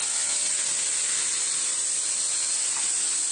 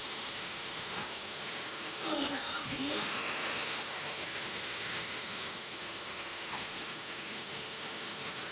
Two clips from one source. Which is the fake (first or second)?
second